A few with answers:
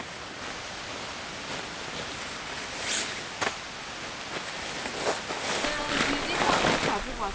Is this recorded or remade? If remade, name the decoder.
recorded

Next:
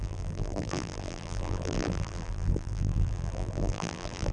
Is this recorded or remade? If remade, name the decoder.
remade, vocoder, BigVGAN v2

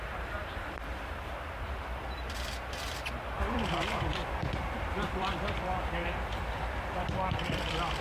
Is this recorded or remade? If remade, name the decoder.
remade, vocoder, BigVGAN v2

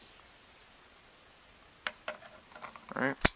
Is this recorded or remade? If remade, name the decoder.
recorded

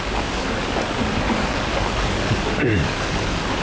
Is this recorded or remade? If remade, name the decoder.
remade, codec, DAC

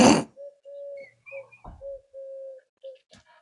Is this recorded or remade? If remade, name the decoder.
recorded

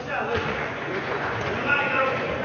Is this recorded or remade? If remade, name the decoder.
remade, vocoder, Vocos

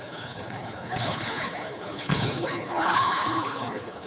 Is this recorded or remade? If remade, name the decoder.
remade, codec, HILCodec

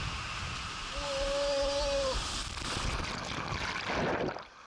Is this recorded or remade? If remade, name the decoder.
recorded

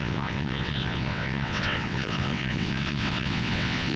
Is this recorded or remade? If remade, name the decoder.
remade, vocoder, WaveNeXt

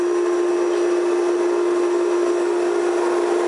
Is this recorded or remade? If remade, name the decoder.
recorded